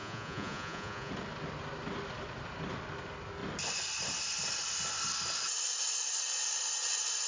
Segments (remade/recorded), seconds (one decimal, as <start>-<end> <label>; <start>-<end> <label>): 0.0-1.1 remade; 1.1-7.3 recorded